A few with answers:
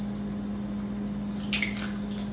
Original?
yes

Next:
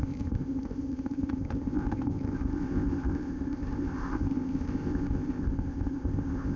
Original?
no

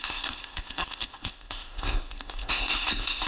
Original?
no